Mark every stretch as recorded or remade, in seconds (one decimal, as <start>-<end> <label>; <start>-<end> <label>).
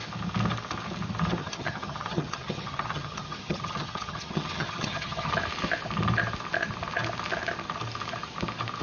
0.0-1.4 recorded; 1.4-5.3 remade; 5.3-8.8 recorded